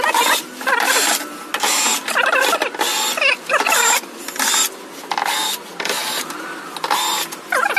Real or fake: real